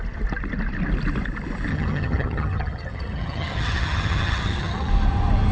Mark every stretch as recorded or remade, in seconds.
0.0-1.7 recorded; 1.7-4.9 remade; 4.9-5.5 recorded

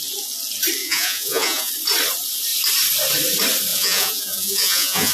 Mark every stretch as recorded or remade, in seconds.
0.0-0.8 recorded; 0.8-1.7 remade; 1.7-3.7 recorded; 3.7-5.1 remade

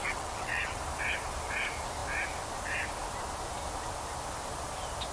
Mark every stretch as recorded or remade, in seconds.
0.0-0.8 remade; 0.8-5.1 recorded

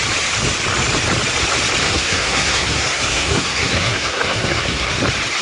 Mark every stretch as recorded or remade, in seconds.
0.0-1.8 recorded; 1.8-5.0 remade; 5.0-5.4 recorded

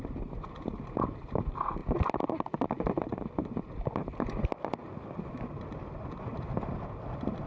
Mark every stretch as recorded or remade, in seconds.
0.0-7.5 recorded

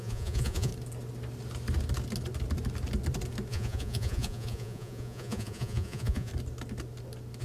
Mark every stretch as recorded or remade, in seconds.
0.0-0.7 remade; 0.7-3.5 recorded; 3.5-6.3 remade; 6.3-7.4 recorded